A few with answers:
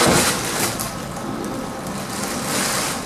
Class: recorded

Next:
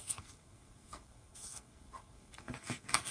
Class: remade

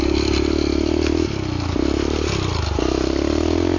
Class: recorded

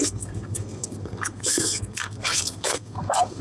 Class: remade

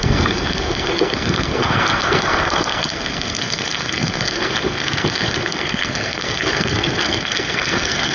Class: remade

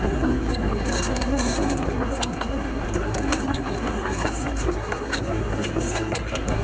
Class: remade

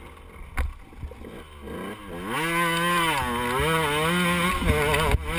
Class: recorded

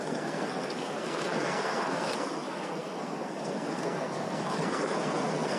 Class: remade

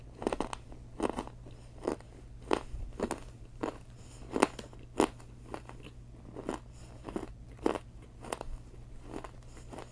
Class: recorded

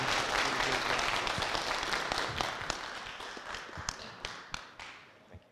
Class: recorded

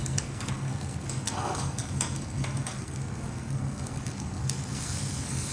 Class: remade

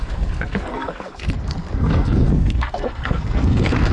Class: remade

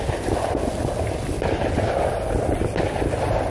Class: recorded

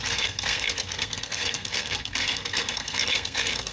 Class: remade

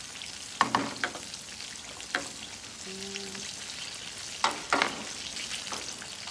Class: recorded